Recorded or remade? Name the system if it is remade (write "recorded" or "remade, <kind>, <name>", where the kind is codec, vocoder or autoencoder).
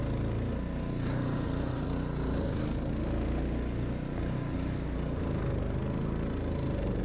recorded